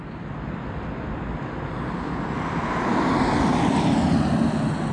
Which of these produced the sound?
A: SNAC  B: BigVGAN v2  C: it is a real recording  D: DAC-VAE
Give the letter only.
C